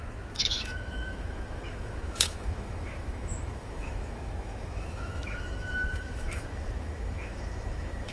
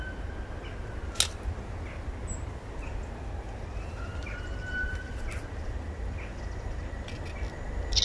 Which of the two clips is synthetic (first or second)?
first